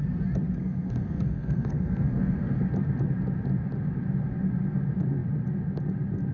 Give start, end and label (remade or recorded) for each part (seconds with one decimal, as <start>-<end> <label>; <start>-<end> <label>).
0.0-0.6 recorded; 0.6-2.6 remade; 2.6-6.3 recorded